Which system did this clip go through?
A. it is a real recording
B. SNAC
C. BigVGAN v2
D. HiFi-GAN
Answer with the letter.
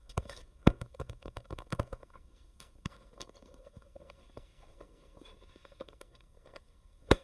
B